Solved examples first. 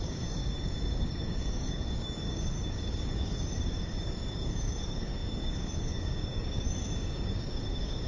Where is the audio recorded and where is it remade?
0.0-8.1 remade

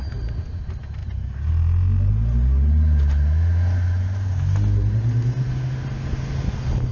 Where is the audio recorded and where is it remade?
0.0-6.9 recorded